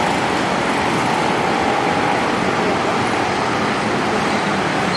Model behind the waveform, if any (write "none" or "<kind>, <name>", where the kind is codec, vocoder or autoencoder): none